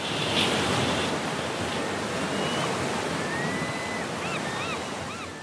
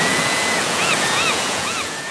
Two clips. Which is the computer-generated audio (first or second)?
second